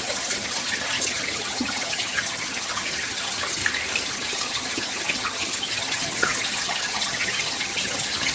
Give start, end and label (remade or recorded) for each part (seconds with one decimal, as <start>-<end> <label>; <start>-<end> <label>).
0.0-3.6 remade; 3.6-4.1 recorded; 4.1-8.3 remade